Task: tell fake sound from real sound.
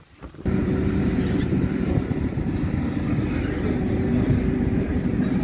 fake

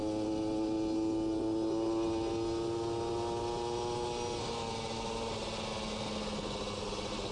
real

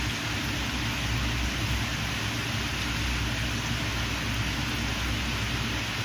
real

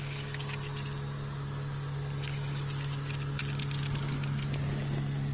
real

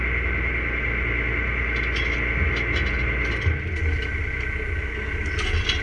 real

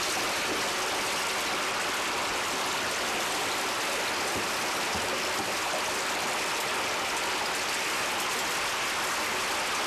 real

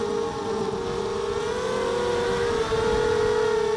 real